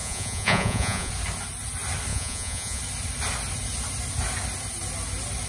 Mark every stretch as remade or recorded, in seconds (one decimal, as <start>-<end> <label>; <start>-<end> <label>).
0.0-1.1 remade; 1.1-2.1 recorded; 2.1-2.8 remade; 2.8-5.5 recorded

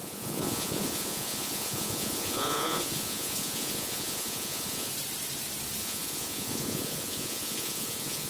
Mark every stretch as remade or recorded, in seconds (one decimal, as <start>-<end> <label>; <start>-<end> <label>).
0.0-4.9 remade; 4.9-5.8 recorded; 5.8-8.3 remade

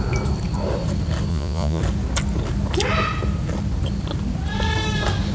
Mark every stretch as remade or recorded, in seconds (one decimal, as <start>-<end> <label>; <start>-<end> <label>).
0.0-1.3 recorded; 1.3-1.8 remade; 1.8-5.3 recorded

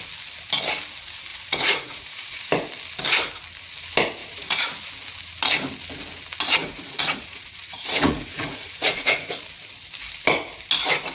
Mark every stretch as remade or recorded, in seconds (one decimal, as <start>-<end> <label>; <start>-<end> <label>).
0.0-1.3 recorded; 1.3-2.5 remade; 2.5-4.2 recorded; 4.2-4.7 remade; 4.7-6.6 recorded; 6.6-9.3 remade; 9.3-11.1 recorded

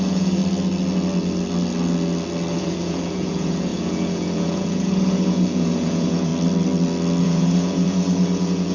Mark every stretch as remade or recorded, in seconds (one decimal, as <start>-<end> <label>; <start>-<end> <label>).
0.0-0.4 remade; 0.4-2.5 recorded; 2.5-6.3 remade; 6.3-7.2 recorded; 7.2-8.7 remade